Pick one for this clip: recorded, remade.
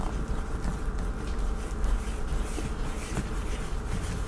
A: recorded